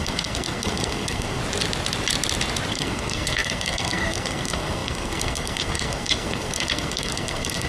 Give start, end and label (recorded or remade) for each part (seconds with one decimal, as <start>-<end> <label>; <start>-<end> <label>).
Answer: 0.0-1.4 remade; 1.4-2.7 recorded; 2.7-7.7 remade